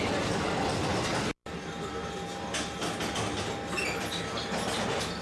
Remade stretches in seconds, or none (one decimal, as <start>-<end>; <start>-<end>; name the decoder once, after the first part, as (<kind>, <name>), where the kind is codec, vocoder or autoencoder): none

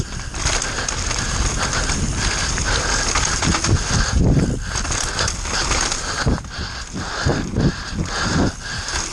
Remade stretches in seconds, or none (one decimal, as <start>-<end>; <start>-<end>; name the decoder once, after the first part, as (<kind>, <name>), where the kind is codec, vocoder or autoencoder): none

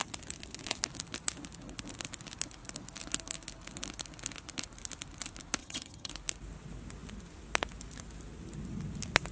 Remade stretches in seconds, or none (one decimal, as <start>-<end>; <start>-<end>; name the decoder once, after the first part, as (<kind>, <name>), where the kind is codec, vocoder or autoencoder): 5.6-6.1 (vocoder, HiFi-GAN)